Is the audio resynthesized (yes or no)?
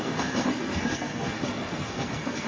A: yes